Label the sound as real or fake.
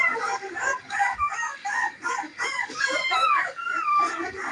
fake